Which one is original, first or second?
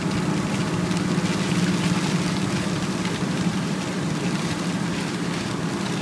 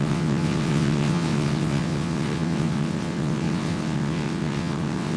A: first